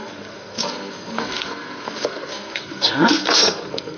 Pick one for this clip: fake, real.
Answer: fake